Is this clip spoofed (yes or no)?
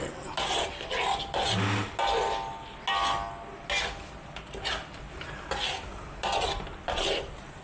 no